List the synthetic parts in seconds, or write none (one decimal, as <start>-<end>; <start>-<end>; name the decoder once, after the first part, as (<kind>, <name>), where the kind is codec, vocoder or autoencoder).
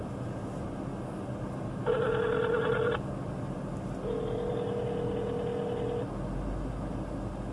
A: none